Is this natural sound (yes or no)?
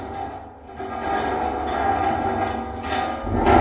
yes